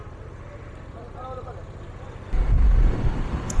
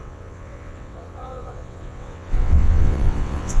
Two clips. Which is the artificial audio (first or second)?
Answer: second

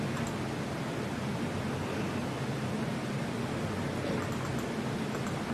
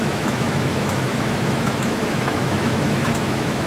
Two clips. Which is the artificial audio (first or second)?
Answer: second